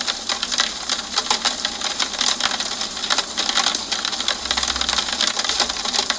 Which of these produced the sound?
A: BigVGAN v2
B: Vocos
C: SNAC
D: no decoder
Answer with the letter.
D